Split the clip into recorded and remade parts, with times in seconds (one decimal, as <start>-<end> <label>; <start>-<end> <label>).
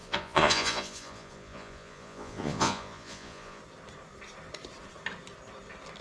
0.0-3.6 remade; 3.6-6.0 recorded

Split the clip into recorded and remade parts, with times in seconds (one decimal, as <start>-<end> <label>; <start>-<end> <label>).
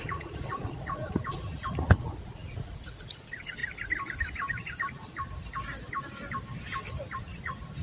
0.0-3.6 remade; 3.6-7.2 recorded; 7.2-7.8 remade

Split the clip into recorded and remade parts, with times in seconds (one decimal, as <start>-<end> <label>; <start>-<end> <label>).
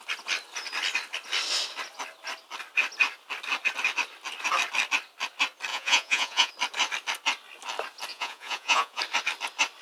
0.0-5.7 recorded; 5.7-6.5 remade; 6.5-8.1 recorded; 8.1-9.0 remade; 9.0-9.8 recorded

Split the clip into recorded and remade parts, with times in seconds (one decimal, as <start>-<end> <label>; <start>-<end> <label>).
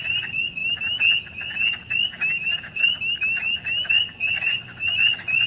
0.0-0.6 remade; 0.6-3.9 recorded; 3.9-5.5 remade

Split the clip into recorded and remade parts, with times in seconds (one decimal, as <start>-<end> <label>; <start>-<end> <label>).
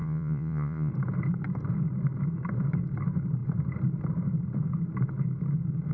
0.0-0.9 remade; 0.9-5.9 recorded